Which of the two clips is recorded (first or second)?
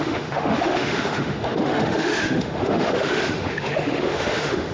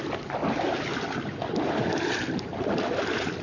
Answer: second